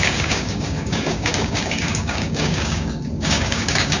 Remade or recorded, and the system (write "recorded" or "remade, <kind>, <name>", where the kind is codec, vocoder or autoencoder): remade, codec, DAC